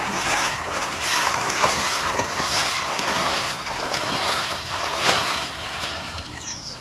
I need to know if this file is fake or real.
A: fake